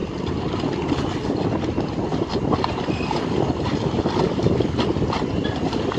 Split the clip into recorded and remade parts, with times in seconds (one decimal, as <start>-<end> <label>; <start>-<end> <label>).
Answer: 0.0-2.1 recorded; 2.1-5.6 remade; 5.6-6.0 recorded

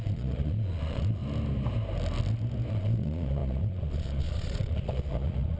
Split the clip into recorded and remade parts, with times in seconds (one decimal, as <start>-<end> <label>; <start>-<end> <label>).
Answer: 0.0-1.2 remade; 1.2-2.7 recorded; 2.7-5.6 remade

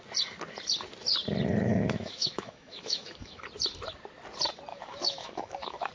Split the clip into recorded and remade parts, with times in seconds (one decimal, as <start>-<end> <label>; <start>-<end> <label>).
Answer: 0.0-1.7 recorded; 1.7-3.4 remade; 3.4-4.7 recorded; 4.7-5.9 remade